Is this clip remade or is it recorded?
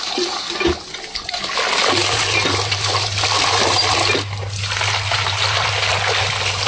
recorded